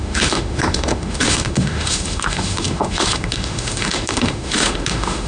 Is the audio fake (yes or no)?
yes